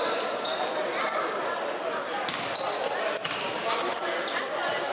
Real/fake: real